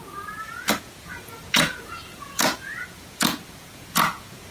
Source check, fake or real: fake